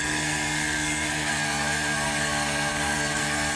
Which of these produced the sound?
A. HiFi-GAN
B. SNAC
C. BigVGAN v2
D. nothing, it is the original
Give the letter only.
B